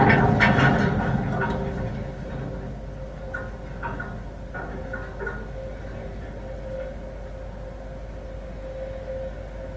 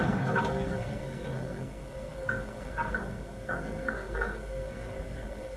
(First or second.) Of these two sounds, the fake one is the second